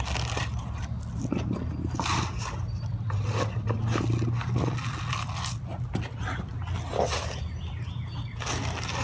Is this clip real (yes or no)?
yes